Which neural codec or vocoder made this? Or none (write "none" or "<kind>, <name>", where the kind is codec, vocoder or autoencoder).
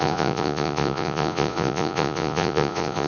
vocoder, Vocos